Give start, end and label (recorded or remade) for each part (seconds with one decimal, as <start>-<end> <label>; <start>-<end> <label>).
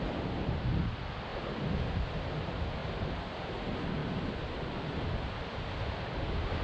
0.0-1.3 recorded; 1.3-2.0 remade; 2.0-2.8 recorded; 2.8-3.5 remade; 3.5-4.0 recorded; 4.0-6.1 remade; 6.1-6.6 recorded